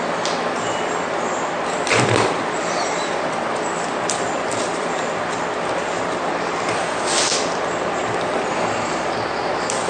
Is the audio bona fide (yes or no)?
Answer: yes